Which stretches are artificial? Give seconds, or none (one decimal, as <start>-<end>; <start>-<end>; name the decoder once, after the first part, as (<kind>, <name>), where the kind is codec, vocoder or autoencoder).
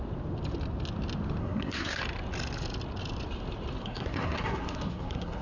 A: 1.4-2.0 (codec, SNAC); 3.8-5.4